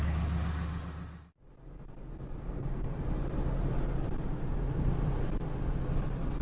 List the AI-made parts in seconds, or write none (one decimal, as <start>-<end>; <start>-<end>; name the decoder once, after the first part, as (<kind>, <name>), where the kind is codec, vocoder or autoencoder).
2.4-3.0 (codec, SNAC)

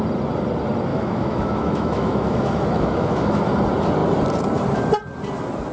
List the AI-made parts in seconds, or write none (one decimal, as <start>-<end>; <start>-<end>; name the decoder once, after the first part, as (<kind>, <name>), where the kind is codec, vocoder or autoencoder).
0.9-3.4 (autoencoder, DAC-VAE)

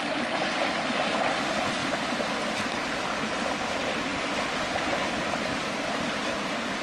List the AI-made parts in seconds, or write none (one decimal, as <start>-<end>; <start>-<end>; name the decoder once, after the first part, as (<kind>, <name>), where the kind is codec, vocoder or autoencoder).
none

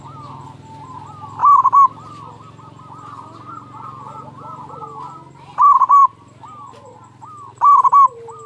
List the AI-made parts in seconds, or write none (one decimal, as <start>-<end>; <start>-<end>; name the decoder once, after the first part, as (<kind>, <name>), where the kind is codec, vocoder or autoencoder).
none

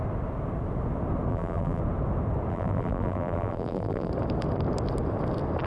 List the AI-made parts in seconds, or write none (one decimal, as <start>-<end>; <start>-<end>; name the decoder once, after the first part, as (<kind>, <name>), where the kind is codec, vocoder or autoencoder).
1.3-1.8 (vocoder, BigVGAN v2); 2.5-4.1

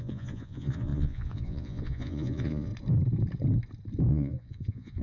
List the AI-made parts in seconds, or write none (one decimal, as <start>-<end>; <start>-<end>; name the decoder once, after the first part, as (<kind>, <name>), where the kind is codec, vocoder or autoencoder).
0.0-2.7 (vocoder, Vocos); 4.1-5.0